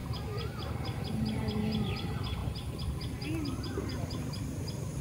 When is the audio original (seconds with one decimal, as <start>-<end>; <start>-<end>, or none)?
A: 1.0-5.0